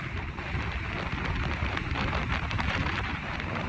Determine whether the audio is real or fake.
fake